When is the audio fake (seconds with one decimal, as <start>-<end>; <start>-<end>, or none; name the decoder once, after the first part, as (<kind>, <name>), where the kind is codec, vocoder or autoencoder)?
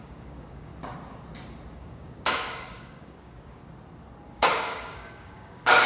0.0-0.7 (codec, DAC); 1.7-3.6; 4.3-5.9